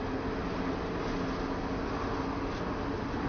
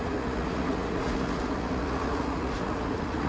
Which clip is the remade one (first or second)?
second